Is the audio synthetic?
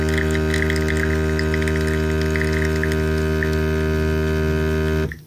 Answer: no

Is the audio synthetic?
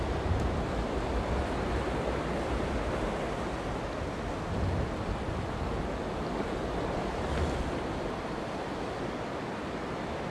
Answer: no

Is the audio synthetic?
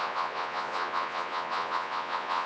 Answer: yes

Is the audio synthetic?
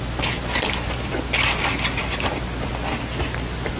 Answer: no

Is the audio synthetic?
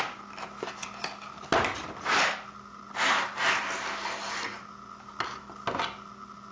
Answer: no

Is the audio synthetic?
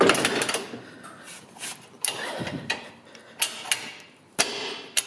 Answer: no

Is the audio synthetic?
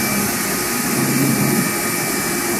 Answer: no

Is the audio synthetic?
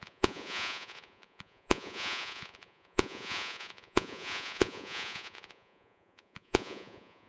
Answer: yes